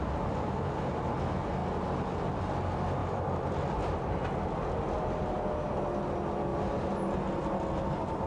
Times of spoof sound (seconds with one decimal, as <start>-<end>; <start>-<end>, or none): none